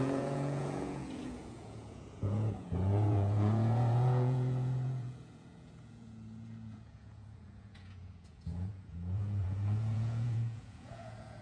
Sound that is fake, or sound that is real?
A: fake